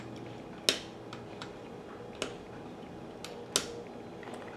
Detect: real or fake real